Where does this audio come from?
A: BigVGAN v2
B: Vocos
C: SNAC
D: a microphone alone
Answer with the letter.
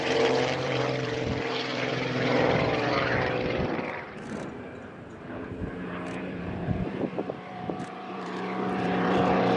A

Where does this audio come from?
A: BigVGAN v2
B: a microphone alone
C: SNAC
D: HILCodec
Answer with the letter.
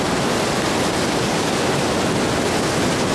B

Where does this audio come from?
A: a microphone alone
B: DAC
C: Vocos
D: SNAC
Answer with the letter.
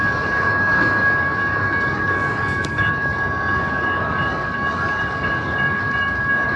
B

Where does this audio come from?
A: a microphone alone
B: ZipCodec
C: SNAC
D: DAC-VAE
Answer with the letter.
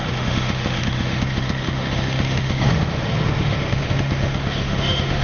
D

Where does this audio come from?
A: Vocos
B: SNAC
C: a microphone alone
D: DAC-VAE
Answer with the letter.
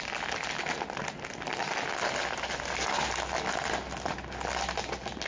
C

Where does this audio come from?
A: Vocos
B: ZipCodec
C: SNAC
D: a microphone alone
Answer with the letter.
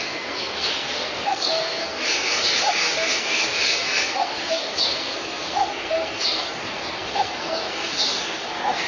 C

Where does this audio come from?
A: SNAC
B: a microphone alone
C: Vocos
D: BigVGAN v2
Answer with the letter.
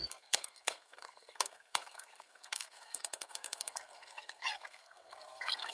A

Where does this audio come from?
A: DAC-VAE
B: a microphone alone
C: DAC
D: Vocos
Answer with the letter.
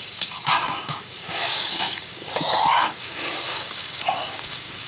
C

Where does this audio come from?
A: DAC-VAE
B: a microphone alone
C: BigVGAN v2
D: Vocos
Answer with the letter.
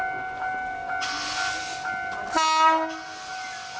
B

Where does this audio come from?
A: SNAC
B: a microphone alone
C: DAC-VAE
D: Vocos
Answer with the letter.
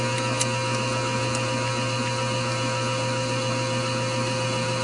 B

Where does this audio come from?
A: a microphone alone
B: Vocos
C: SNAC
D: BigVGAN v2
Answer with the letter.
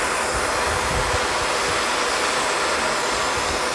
A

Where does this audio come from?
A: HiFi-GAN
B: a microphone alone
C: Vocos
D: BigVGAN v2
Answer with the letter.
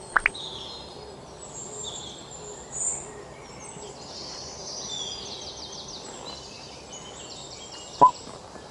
B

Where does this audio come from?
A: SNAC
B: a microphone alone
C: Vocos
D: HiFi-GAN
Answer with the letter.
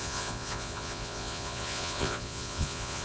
C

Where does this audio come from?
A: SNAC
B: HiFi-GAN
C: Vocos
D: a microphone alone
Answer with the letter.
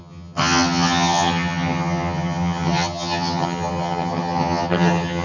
B